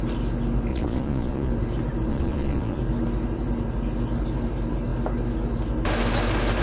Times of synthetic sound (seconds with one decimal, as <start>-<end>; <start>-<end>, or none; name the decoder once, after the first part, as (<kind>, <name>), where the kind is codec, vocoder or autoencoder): 0.7-1.5 (vocoder, Vocos); 2.1-2.8